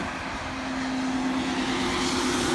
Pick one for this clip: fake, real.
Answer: real